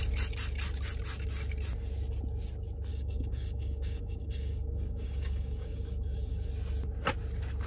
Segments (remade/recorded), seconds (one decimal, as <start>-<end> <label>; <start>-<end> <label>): 0.0-2.9 recorded; 2.9-6.5 remade; 6.5-7.7 recorded